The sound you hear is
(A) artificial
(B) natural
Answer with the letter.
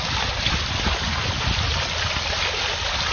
B